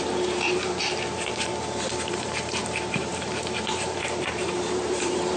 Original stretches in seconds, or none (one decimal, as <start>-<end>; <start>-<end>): 1.5-2.1